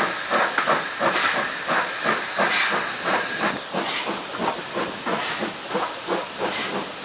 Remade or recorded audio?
recorded